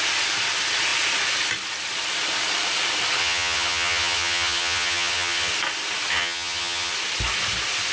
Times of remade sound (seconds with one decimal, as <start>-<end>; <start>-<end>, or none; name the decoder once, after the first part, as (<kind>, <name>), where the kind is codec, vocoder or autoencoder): 3.2-5.5 (vocoder, HiFi-GAN); 6.1-6.9